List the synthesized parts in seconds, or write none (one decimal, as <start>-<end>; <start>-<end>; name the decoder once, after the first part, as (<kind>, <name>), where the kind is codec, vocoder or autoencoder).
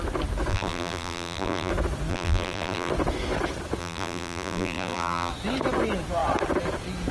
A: 0.5-1.7 (vocoder, BigVGAN v2); 2.1-2.9; 3.8-5.3